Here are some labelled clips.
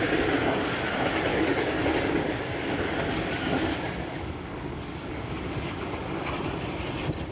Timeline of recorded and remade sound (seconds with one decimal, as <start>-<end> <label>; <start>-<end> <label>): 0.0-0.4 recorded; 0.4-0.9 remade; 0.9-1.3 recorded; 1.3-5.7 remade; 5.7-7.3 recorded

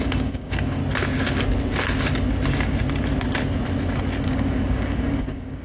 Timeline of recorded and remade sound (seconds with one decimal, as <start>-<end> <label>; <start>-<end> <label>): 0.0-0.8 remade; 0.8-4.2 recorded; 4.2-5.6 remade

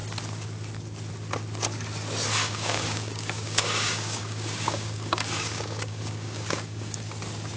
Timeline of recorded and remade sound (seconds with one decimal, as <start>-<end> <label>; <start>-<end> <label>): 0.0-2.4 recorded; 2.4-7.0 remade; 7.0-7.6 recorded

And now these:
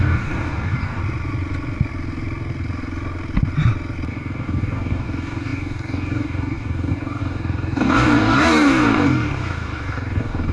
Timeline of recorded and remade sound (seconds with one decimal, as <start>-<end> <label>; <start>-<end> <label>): 0.0-1.0 remade; 1.0-4.1 recorded; 4.1-10.5 remade

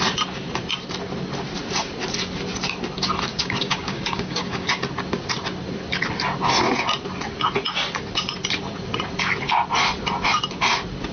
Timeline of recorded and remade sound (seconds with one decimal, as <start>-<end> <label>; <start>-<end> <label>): 0.0-3.3 recorded; 3.3-4.8 remade; 4.8-11.1 recorded

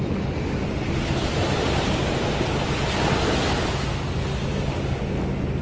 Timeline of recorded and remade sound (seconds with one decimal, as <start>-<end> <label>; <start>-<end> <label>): 0.0-4.4 recorded; 4.4-5.0 remade; 5.0-5.6 recorded